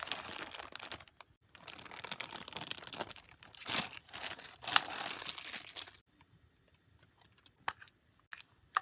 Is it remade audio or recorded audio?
recorded